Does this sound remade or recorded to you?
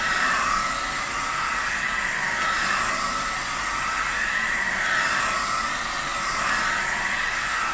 recorded